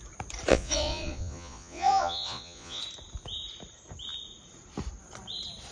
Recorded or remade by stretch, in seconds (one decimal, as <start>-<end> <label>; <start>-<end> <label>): 0.0-0.5 recorded; 0.5-2.8 remade; 2.8-5.7 recorded